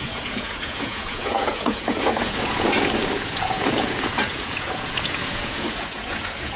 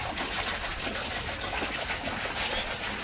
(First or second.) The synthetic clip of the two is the first